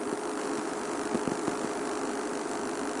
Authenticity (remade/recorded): recorded